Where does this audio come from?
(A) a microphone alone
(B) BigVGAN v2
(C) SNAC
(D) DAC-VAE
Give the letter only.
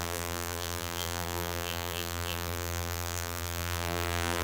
B